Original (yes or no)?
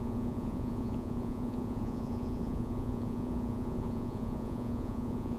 no